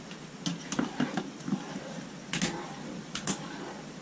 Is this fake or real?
real